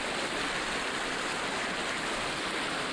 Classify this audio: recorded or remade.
recorded